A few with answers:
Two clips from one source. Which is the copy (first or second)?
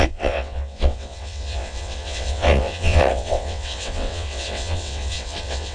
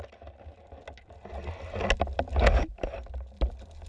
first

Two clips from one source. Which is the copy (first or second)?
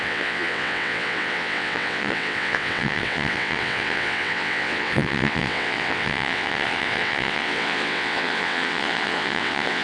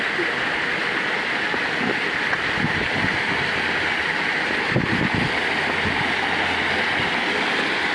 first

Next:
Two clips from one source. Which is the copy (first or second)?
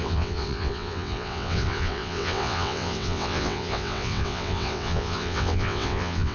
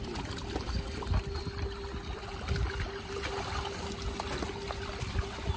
first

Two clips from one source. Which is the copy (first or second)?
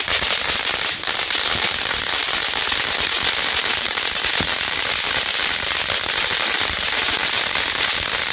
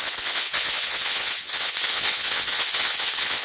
second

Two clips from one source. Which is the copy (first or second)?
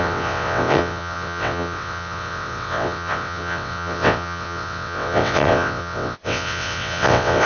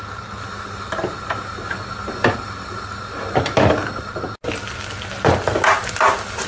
first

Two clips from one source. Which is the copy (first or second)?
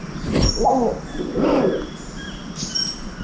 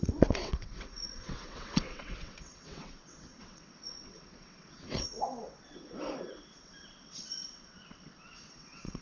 second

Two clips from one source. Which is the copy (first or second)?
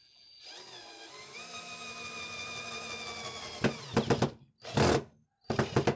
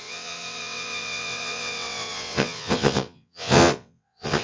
second